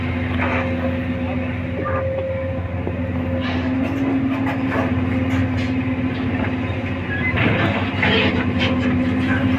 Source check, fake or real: real